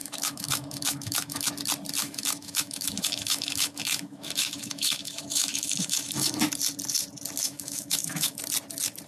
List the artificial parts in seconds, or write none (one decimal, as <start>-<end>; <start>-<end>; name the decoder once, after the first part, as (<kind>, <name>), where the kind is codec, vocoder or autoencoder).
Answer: 0.0-1.5 (autoencoder, DAC-VAE); 2.0-6.4; 7.4-8.4